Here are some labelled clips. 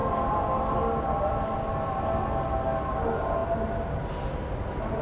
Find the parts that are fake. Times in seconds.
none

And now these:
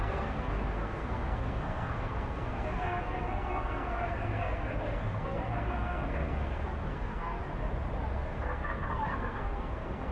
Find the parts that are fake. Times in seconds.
0.0-7.4; 8.1-10.1

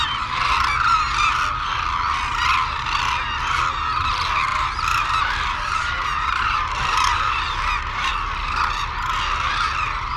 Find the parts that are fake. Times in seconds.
4.5-8.1

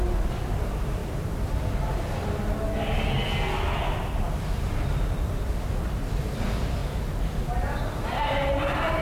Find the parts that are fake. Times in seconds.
none

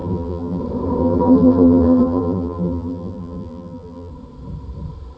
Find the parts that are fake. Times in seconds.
0.0-0.6; 1.0-4.1